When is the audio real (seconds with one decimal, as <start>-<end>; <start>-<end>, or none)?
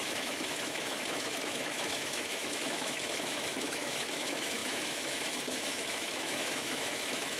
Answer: none